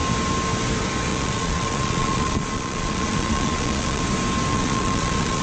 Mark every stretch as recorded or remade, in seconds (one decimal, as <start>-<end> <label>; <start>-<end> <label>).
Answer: 0.0-1.1 recorded; 1.1-4.0 remade; 4.0-4.5 recorded; 4.5-5.4 remade